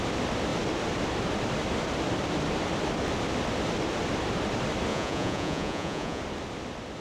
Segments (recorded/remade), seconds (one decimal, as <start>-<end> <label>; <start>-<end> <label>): 0.0-4.9 recorded; 4.9-6.2 remade; 6.2-7.0 recorded